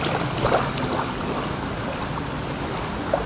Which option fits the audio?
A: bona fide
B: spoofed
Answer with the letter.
A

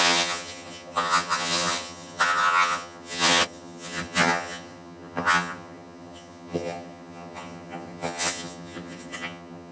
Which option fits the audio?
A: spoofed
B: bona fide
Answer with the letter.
A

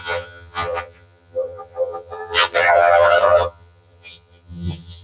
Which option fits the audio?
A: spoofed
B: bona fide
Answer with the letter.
A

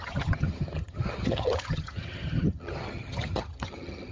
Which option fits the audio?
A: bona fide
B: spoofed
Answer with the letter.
B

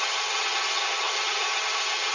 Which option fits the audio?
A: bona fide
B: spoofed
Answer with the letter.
B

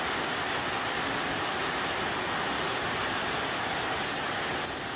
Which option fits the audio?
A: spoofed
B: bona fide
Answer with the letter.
B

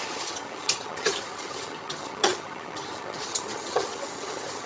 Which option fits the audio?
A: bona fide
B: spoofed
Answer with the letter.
B